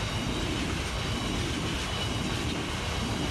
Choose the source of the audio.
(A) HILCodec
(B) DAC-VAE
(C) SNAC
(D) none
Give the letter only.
D